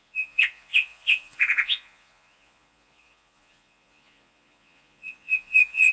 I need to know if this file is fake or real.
fake